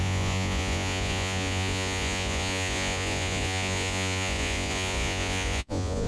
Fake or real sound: fake